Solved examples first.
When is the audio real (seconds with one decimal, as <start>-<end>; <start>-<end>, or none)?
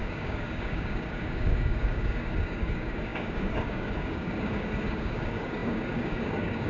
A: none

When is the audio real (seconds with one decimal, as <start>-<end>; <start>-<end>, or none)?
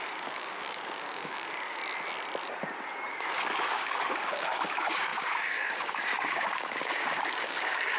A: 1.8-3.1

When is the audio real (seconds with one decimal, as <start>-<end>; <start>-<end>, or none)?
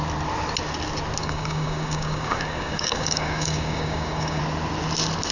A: 0.0-1.2; 4.4-5.3